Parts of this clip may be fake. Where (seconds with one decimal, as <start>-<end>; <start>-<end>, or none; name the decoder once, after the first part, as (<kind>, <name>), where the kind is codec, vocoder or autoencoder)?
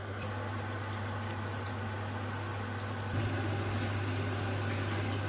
none